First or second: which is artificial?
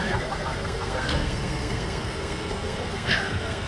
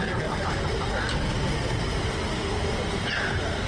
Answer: first